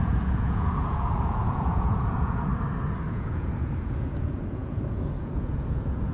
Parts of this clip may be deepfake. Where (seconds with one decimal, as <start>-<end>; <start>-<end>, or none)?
0.0-2.5; 3.1-6.1